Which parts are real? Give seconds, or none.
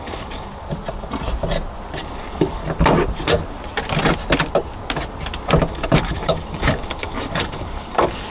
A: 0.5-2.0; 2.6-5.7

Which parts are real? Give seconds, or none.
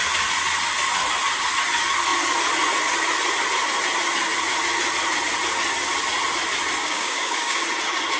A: 0.0-6.8; 7.6-8.2